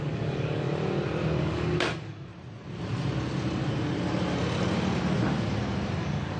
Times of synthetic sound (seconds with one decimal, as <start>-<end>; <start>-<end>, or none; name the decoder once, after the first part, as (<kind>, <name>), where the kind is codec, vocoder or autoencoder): 0.0-0.7 (codec, DAC); 1.4-2.3; 6.0-6.4